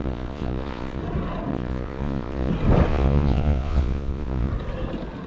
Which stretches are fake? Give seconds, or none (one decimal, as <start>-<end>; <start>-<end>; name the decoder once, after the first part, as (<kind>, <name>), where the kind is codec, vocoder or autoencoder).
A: 0.0-1.0 (vocoder, Vocos); 1.5-2.5; 2.9-4.5